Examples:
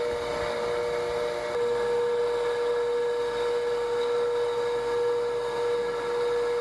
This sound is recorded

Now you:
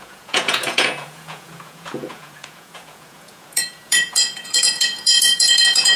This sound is remade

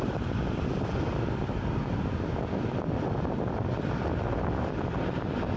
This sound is recorded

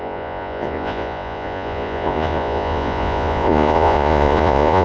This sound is remade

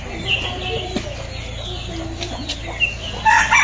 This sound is recorded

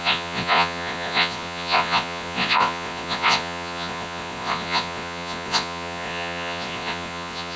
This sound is remade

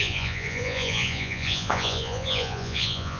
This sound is remade